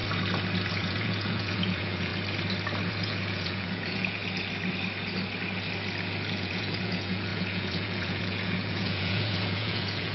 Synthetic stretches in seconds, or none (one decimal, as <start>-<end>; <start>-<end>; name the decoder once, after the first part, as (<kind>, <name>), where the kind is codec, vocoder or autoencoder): 0.7-2.1 (vocoder, Vocos); 2.9-4.2; 6.3-10.1